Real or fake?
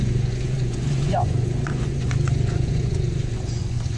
fake